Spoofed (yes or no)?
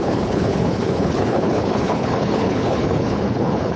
yes